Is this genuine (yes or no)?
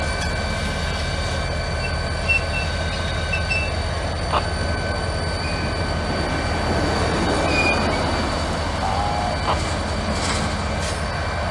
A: yes